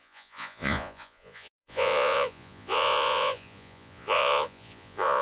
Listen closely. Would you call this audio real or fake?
fake